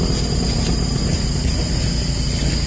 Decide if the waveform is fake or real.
real